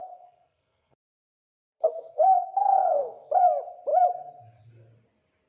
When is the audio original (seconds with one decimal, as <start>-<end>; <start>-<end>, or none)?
3.3-5.5